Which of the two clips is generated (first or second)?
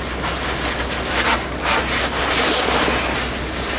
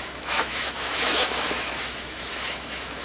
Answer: second